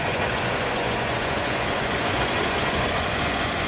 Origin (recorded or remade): remade